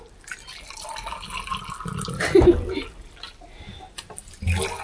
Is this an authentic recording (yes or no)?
yes